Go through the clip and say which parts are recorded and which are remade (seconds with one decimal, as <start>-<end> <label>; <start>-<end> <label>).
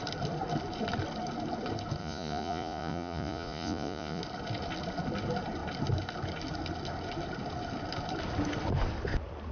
0.0-2.0 recorded; 2.0-4.2 remade; 4.2-9.5 recorded